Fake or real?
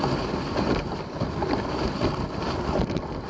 real